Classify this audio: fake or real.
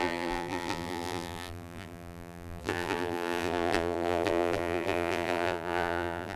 fake